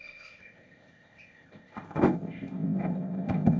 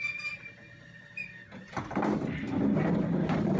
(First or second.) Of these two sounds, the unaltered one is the second